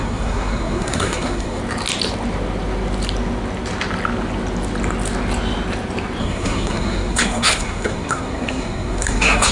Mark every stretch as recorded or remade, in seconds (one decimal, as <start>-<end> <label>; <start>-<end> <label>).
0.0-1.6 remade; 1.6-6.2 recorded; 6.2-9.5 remade